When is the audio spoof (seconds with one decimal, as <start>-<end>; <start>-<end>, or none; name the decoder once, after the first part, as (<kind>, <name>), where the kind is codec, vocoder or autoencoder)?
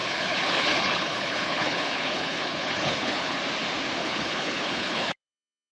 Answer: 0.0-3.4 (codec, HILCodec); 4.0-5.7